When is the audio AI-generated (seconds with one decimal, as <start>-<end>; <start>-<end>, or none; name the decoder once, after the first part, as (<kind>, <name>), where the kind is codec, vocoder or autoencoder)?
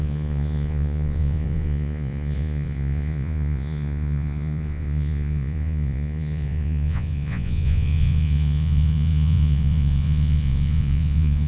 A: 0.0-11.5 (vocoder, Vocos)